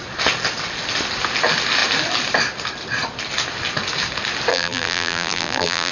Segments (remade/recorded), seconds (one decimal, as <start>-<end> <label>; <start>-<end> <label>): 0.0-4.5 recorded; 4.5-5.9 remade